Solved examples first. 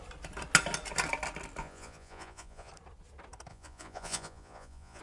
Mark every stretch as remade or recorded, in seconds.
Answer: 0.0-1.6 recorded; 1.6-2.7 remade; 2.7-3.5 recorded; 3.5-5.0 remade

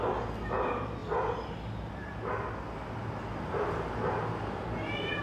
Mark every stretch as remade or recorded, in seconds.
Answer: 0.0-5.2 recorded

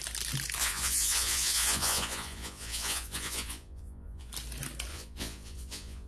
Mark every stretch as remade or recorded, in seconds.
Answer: 0.0-0.6 recorded; 0.6-4.3 remade; 4.3-4.9 recorded; 4.9-6.1 remade

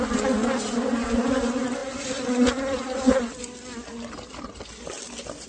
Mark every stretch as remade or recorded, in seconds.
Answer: 0.0-5.5 recorded

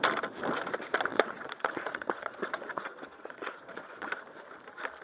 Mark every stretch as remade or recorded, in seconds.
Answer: 0.0-1.1 recorded; 1.1-4.1 remade; 4.1-5.0 recorded

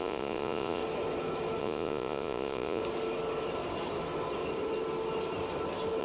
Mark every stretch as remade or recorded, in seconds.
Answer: 0.0-0.8 remade; 0.8-1.6 recorded; 1.6-2.8 remade; 2.8-6.0 recorded